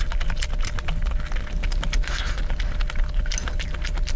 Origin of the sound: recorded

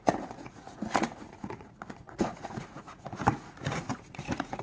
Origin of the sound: remade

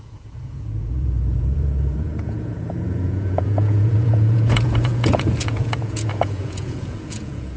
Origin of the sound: remade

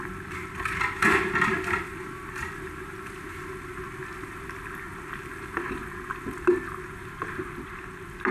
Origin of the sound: recorded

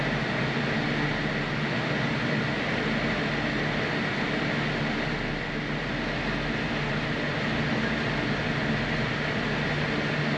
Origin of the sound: recorded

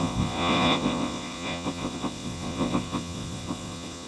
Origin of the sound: remade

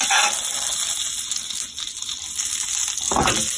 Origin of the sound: recorded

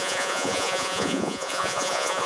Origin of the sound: remade